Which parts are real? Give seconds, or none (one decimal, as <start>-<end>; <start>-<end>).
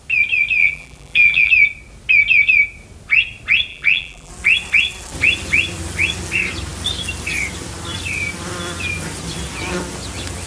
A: 0.0-0.6; 1.5-3.7; 4.3-10.5